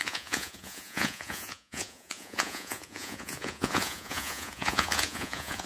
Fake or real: fake